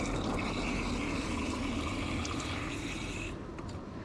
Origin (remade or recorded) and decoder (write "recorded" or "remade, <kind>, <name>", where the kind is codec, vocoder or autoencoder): recorded